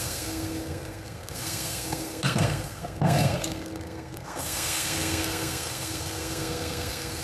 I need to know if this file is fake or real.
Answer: fake